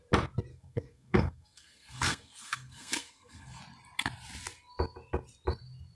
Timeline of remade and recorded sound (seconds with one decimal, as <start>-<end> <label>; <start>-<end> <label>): 0.0-0.5 recorded; 0.5-3.6 remade; 3.6-5.9 recorded